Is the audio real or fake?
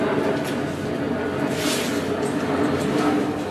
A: real